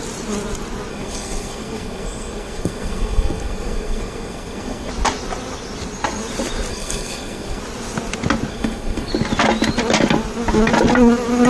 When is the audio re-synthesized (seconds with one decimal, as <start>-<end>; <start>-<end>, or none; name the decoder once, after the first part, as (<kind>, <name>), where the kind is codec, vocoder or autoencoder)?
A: 0.9-4.9 (codec, SNAC); 6.7-7.6; 8.5-9.1